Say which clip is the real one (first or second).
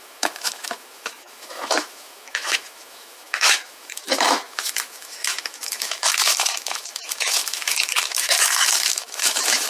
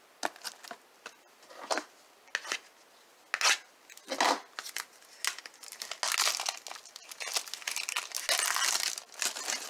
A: second